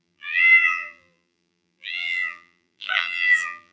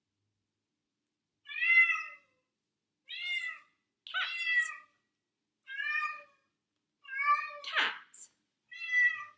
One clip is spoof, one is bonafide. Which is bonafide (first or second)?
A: second